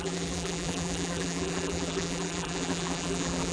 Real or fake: fake